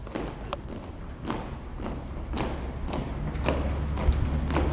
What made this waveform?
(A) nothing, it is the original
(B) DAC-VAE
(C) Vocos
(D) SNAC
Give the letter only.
A